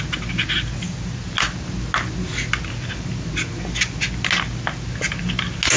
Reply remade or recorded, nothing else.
recorded